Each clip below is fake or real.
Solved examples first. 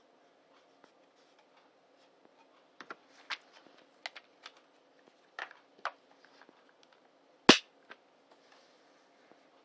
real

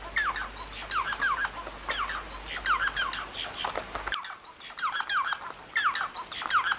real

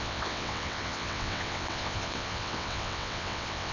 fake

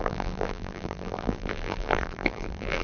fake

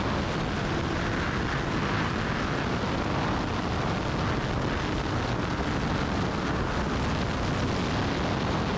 real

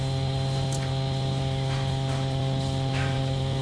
real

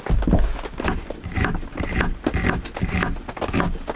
real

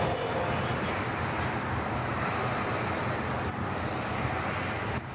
real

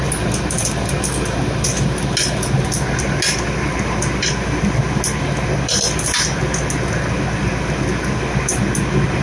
real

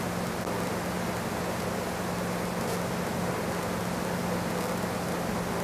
real